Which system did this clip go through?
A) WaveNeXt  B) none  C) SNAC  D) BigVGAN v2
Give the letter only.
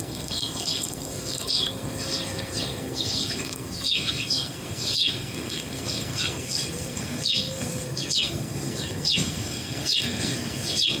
C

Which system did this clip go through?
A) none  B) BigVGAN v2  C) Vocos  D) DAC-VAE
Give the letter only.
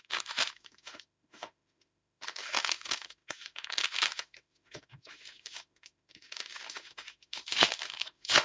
D